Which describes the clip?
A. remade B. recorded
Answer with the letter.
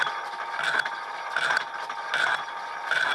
B